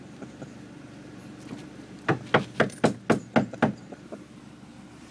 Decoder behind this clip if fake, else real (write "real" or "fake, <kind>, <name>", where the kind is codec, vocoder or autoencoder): real